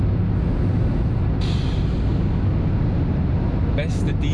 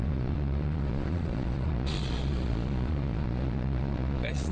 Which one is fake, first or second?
second